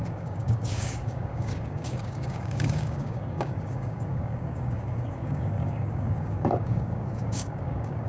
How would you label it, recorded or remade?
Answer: remade